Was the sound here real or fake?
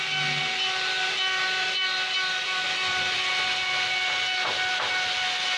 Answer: real